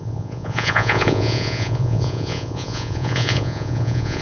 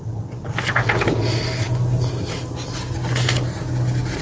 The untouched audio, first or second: second